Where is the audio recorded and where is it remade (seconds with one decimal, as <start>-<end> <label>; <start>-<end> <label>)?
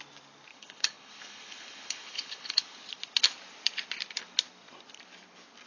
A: 0.0-0.5 recorded; 0.5-2.8 remade; 2.8-5.7 recorded